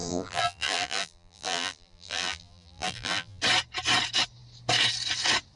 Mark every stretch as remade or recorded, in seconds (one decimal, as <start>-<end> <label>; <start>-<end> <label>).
0.0-3.4 remade; 3.4-5.6 recorded